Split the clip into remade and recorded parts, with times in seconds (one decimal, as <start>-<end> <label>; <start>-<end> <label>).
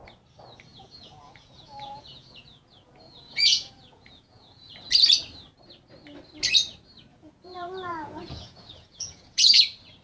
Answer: 0.0-0.7 recorded; 0.7-4.7 remade; 4.7-7.1 recorded; 7.1-9.6 remade; 9.6-10.0 recorded